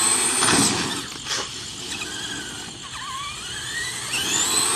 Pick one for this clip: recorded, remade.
recorded